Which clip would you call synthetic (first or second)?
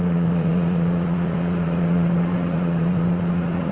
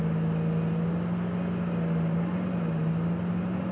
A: first